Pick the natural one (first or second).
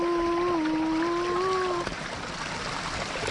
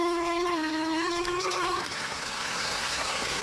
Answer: first